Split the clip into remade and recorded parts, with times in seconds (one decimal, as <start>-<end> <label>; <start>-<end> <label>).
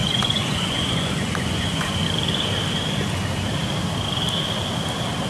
0.0-2.0 remade; 2.0-5.3 recorded